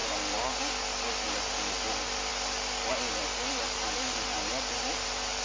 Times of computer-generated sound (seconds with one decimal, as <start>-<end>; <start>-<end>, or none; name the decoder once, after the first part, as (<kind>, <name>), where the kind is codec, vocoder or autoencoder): none